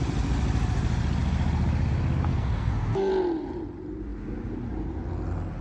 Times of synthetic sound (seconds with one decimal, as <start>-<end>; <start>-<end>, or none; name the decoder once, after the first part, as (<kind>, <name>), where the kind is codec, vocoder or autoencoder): 2.3-3.1 (codec, SNAC)